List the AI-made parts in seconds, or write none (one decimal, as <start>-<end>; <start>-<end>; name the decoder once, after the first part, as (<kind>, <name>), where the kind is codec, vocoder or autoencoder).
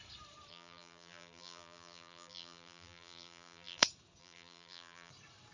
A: 0.5-3.8 (vocoder, BigVGAN v2); 4.2-5.1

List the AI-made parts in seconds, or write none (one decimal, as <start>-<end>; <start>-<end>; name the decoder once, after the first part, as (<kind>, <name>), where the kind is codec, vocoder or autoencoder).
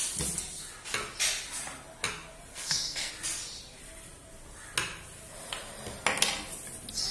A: 2.5-3.1 (codec, SNAC)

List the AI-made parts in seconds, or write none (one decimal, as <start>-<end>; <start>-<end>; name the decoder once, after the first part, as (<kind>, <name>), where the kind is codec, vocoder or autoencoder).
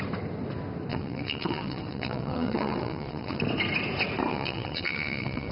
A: 0.9-3.4 (vocoder, WaveNeXt); 4.3-5.5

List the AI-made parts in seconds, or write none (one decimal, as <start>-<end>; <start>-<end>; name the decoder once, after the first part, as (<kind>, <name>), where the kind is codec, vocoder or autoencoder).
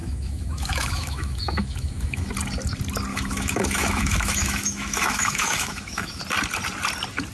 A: 0.0-2.3 (autoencoder, DAC-VAE); 3.1-6.2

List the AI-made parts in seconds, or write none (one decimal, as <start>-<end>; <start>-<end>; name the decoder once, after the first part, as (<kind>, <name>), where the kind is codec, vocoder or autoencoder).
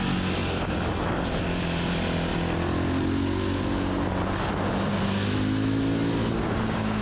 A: none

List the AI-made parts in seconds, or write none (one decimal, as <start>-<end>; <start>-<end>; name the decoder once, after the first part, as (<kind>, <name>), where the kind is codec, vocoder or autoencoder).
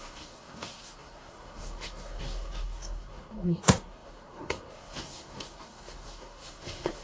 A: 0.0-7.0 (codec, SNAC)